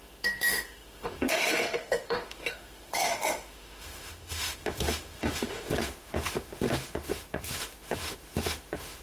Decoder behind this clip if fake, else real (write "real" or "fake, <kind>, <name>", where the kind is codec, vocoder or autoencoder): fake, autoencoder, DAC-VAE